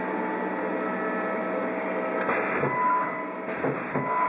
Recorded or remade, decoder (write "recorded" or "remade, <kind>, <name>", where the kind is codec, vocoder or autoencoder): recorded